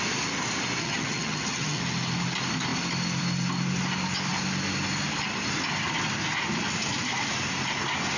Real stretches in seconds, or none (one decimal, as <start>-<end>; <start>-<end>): 0.0-0.8; 1.8-8.2